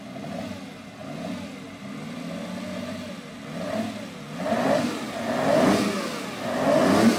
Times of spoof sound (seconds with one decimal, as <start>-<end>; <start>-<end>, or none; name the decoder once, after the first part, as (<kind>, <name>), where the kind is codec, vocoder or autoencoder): none